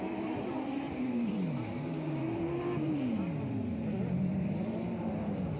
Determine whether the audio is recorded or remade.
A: recorded